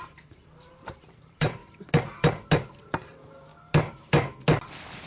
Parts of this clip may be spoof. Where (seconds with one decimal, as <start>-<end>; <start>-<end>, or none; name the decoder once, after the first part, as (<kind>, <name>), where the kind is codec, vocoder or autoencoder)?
0.0-1.6 (vocoder, BigVGAN v2); 2.8-3.5

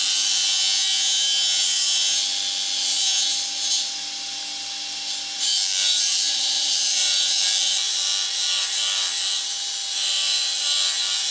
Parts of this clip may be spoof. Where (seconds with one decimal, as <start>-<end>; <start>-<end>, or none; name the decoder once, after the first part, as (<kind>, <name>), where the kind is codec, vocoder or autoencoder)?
0.0-0.4 (vocoder, BigVGAN v2); 5.3-11.3

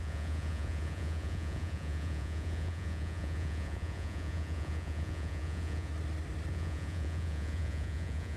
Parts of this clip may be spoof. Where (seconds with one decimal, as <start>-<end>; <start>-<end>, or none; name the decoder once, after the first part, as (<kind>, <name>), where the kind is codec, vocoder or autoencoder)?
0.0-5.9 (vocoder, Vocos); 6.5-8.4